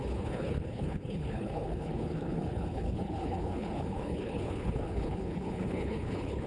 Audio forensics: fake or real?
fake